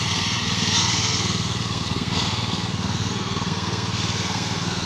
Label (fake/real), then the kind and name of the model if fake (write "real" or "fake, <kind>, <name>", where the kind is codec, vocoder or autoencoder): fake, codec, SNAC